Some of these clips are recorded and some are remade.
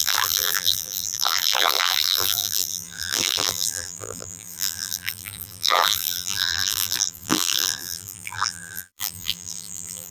remade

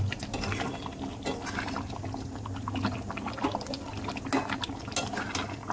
recorded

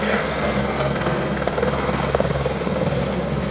remade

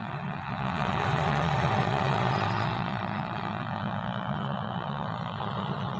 remade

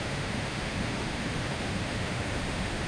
remade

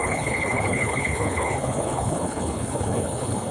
remade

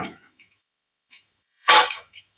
remade